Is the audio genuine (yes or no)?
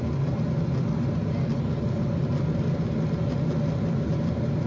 yes